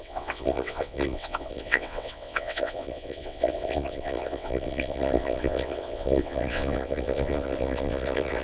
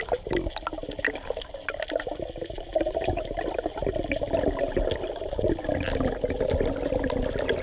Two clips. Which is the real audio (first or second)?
second